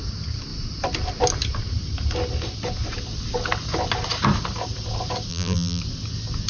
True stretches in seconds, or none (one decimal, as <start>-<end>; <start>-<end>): 0.0-5.3; 5.8-6.5